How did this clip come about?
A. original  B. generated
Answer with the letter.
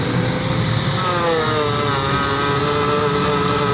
A